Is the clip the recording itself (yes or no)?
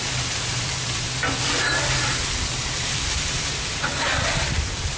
no